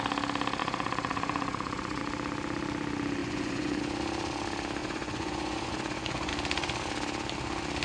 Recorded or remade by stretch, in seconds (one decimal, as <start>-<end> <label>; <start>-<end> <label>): 0.0-0.6 recorded; 0.6-2.0 remade; 2.0-3.2 recorded; 3.2-3.8 remade; 3.8-4.8 recorded; 4.8-6.3 remade; 6.3-7.8 recorded

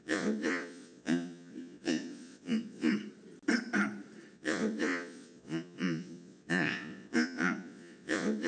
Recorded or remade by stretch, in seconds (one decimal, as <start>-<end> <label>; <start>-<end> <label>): 0.0-2.9 remade; 2.9-4.3 recorded; 4.3-8.5 remade

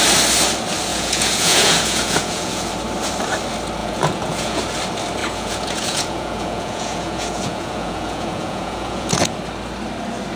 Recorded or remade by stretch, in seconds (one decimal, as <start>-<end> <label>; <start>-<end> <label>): 0.0-0.9 recorded; 0.9-2.7 remade; 2.7-3.8 recorded; 3.8-4.6 remade; 4.6-5.2 recorded; 5.2-9.4 remade; 9.4-10.4 recorded